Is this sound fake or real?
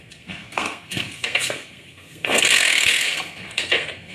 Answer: fake